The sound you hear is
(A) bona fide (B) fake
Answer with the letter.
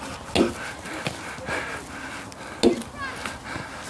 A